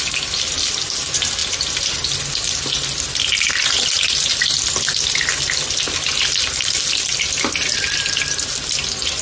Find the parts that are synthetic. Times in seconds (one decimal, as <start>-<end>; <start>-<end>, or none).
none